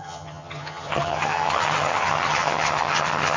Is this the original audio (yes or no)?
no